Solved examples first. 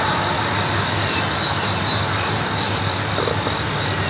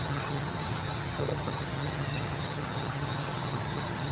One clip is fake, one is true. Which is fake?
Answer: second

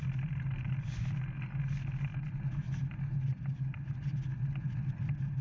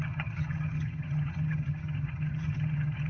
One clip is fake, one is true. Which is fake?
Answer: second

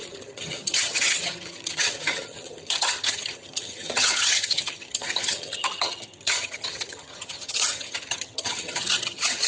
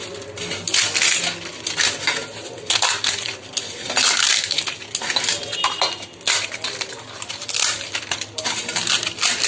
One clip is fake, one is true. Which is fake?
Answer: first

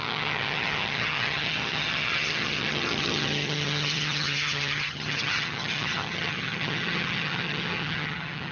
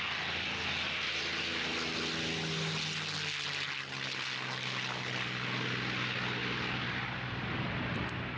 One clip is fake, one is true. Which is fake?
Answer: first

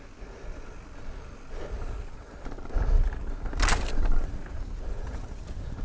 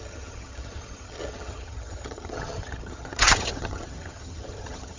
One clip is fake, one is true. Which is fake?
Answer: second